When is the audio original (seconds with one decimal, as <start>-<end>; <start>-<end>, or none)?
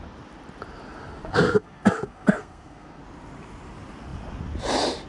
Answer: 0.0-1.3; 3.0-5.1